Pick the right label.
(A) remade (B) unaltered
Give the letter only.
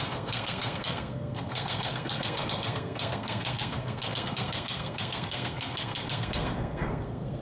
A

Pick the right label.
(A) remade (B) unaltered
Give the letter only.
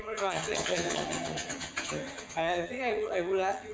A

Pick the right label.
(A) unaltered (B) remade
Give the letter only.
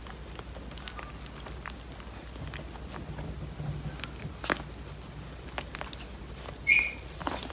A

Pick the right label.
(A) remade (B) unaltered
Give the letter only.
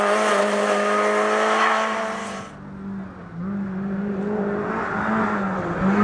B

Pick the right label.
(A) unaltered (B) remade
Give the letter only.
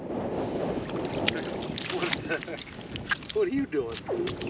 A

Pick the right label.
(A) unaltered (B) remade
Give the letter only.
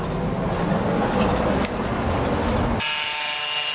A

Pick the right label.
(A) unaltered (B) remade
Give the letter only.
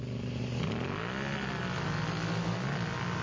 A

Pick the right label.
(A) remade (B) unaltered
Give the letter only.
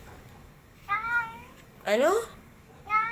A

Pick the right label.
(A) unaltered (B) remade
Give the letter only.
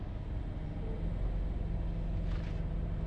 A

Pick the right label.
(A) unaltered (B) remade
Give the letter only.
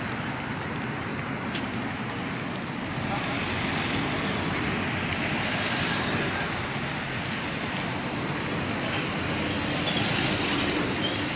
A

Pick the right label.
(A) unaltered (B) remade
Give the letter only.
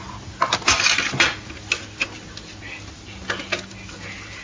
A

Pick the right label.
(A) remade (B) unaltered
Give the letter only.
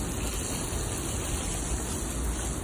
B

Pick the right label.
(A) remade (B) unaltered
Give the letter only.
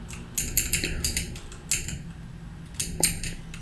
B